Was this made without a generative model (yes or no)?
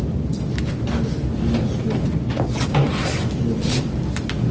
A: yes